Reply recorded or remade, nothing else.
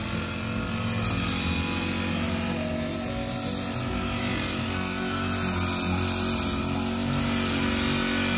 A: recorded